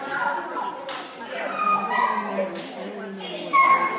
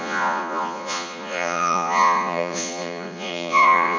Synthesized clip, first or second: second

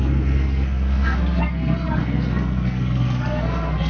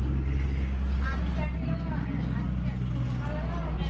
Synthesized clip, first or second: first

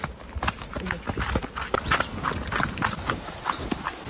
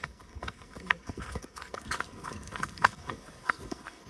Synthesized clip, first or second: second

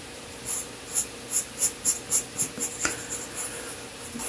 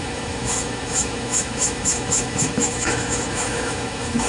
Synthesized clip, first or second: second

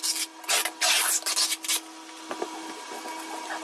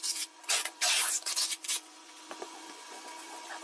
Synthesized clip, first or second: second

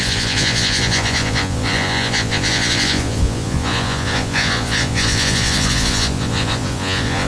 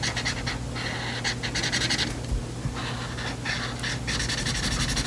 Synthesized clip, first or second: first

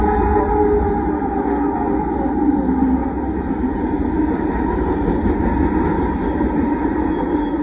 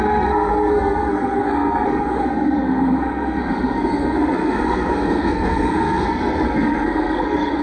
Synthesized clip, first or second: second